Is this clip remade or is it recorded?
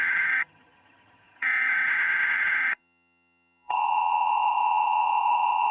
remade